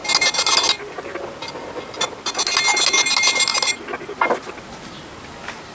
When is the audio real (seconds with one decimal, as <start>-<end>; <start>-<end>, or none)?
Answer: 0.0-5.7